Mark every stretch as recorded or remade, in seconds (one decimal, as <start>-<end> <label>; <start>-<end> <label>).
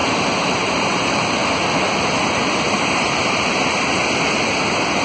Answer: 0.0-0.7 recorded; 0.7-1.4 remade; 1.4-2.0 recorded; 2.0-4.0 remade; 4.0-5.0 recorded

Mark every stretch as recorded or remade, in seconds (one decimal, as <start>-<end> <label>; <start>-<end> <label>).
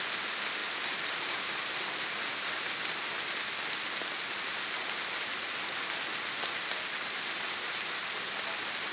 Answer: 0.0-8.9 recorded